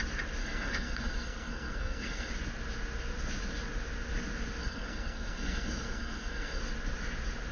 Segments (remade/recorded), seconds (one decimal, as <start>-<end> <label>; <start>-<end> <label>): 0.0-0.4 recorded; 0.4-2.3 remade; 2.3-4.6 recorded; 4.6-6.6 remade; 6.6-7.5 recorded